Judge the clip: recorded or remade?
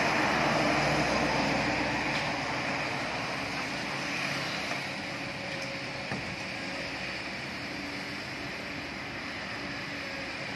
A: recorded